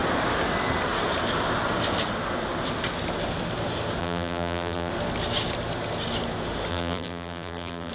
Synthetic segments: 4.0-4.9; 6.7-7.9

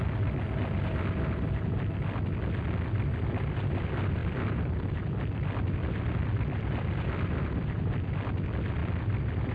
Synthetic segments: 4.2-8.1; 8.8-9.5